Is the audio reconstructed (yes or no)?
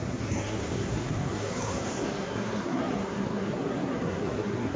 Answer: yes